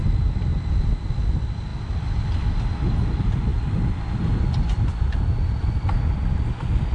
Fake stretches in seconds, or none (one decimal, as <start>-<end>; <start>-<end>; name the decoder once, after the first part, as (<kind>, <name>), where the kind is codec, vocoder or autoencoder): 0.5-1.1 (vocoder, BigVGAN v2); 1.7-2.3